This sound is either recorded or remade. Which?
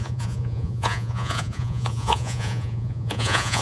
remade